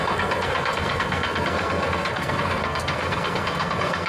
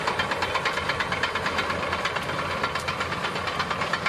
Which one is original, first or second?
second